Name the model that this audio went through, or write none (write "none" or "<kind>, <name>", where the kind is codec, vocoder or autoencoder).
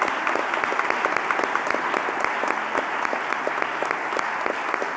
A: none